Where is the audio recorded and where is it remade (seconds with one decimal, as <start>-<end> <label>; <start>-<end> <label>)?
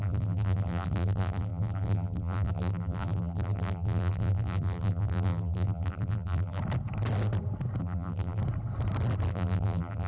0.0-6.6 remade; 6.6-7.8 recorded; 7.8-8.4 remade; 8.4-9.3 recorded; 9.3-10.1 remade